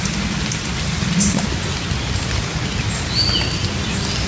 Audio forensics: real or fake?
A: real